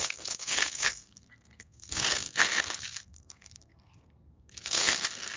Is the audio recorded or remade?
remade